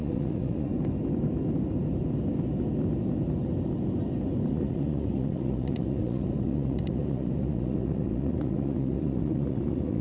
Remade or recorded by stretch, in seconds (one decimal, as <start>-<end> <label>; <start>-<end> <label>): 0.0-0.7 remade; 0.7-4.5 recorded; 4.5-10.0 remade

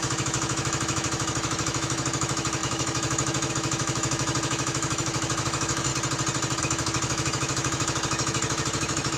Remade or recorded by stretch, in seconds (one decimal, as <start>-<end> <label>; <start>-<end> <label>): 0.0-5.9 remade; 5.9-6.6 recorded; 6.6-9.2 remade

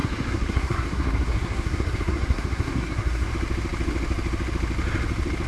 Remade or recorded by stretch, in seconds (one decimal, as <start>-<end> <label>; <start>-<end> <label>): 0.0-3.3 remade; 3.3-5.5 recorded

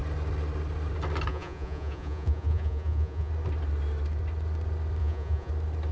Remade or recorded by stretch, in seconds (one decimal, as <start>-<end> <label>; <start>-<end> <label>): 0.0-1.3 recorded; 1.3-3.3 remade; 3.3-5.0 recorded; 5.0-5.5 remade; 5.5-5.9 recorded

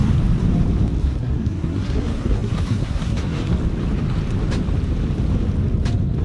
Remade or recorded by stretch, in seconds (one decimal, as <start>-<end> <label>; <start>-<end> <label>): 0.0-1.0 recorded; 1.0-3.5 remade; 3.5-6.2 recorded